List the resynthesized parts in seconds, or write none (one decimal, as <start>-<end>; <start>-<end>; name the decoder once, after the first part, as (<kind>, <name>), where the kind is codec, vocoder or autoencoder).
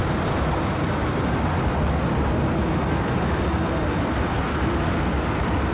none